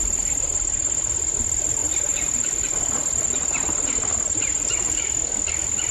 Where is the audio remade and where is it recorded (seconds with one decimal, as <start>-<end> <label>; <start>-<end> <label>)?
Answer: 0.0-1.8 recorded; 1.8-5.3 remade; 5.3-5.9 recorded